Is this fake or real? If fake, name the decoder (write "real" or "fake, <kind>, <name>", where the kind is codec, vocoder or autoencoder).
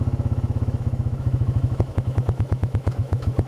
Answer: fake, autoencoder, DAC-VAE